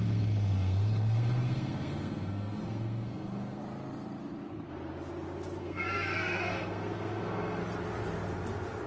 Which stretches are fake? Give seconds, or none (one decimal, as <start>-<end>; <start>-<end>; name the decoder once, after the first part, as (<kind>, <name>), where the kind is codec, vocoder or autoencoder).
0.0-3.6 (codec, SNAC); 5.6-7.6